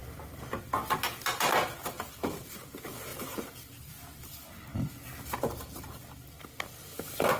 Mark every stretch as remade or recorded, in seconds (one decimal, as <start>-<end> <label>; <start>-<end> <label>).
0.0-3.1 recorded; 3.1-4.3 remade; 4.3-7.4 recorded